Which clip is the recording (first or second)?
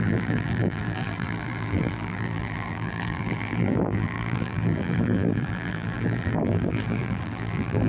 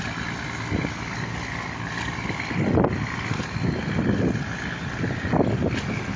second